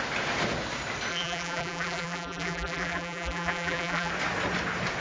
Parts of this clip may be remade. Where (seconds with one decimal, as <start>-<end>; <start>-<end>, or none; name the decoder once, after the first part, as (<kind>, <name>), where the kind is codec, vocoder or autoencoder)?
1.1-4.1 (vocoder, BigVGAN v2)